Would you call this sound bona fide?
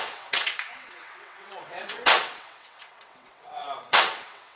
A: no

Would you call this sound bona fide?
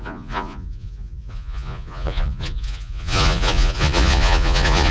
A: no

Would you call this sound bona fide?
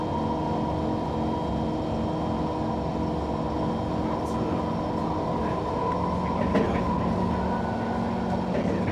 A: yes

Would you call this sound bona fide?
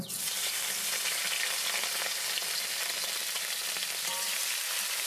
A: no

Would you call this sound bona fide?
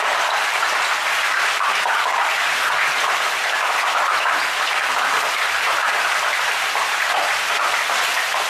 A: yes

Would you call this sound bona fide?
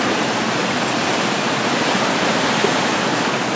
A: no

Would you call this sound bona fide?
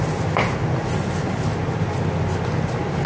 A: yes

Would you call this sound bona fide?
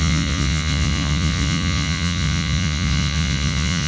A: no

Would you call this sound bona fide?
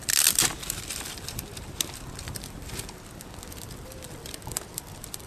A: yes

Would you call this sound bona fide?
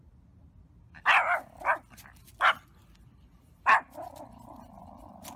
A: yes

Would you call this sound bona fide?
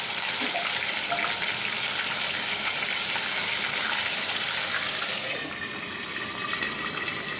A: yes